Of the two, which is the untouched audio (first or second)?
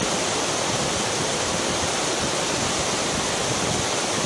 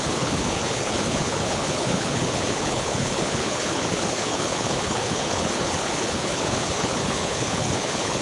first